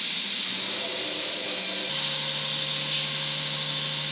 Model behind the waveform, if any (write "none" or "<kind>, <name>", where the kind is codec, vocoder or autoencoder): none